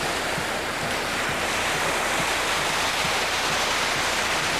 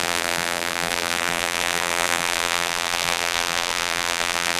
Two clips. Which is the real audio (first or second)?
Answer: first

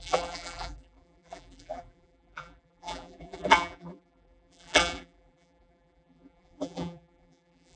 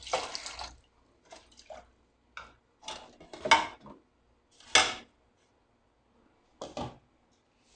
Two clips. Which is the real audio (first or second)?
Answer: second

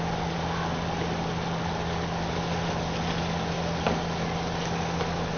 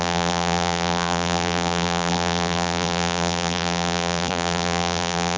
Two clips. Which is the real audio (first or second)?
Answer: first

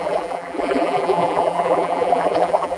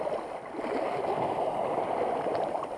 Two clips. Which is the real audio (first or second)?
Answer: second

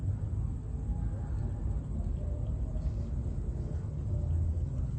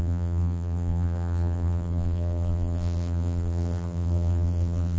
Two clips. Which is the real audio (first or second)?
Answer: first